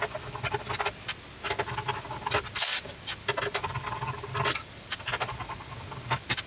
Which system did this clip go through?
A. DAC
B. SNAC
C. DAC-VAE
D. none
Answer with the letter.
D